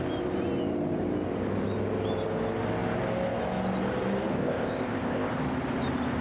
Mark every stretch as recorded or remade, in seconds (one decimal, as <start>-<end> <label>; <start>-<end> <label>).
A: 0.0-4.3 recorded; 4.3-5.3 remade; 5.3-6.2 recorded